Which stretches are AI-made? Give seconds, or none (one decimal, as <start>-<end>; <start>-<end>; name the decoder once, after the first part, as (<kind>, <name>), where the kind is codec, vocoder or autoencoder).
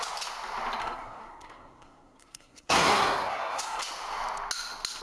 0.8-3.8 (codec, SNAC)